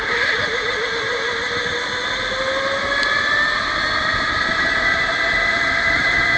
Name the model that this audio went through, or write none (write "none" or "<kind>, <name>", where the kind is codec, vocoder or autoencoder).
none